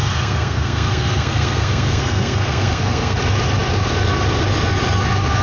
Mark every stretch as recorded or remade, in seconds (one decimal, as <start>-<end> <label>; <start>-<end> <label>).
0.0-3.2 remade; 3.2-5.4 recorded